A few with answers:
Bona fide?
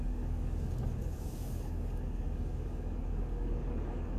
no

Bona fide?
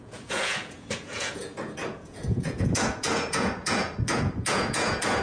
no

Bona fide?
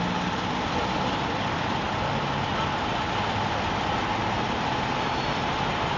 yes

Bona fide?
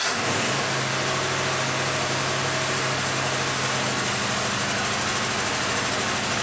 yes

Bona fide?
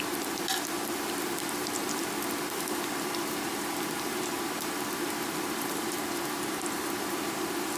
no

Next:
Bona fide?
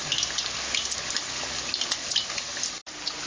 yes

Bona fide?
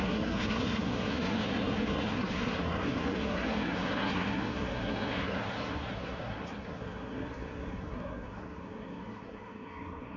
no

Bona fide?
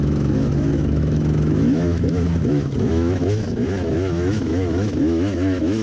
no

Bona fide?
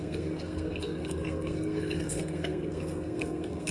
no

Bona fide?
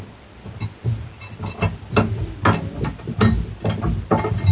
yes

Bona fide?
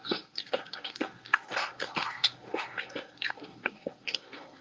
no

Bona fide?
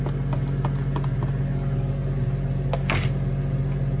yes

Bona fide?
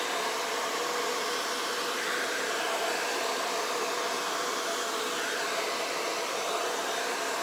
yes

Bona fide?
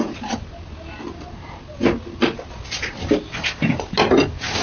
yes